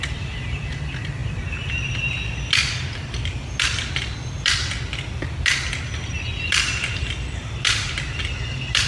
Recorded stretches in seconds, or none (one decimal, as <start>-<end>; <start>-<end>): 0.0-8.9